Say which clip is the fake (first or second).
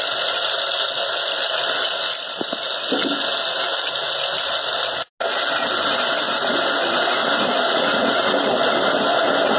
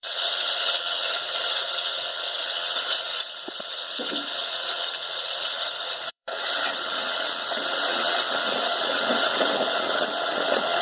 second